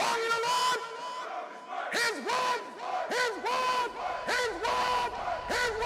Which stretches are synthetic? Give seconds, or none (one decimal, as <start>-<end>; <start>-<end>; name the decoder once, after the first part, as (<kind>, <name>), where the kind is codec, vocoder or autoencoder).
0.0-0.6 (vocoder, BigVGAN v2); 4.0-5.9